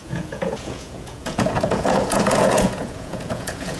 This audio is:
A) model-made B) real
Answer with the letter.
A